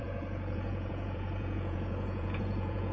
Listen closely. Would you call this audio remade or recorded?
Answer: remade